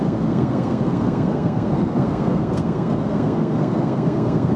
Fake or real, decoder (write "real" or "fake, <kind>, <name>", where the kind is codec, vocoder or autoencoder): fake, codec, SNAC